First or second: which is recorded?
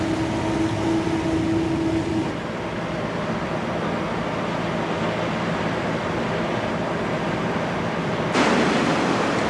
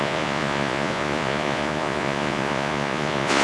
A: first